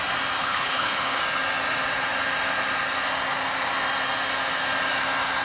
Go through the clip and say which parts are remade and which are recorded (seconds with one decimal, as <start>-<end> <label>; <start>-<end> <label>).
0.0-0.4 recorded; 0.4-1.2 remade; 1.2-5.4 recorded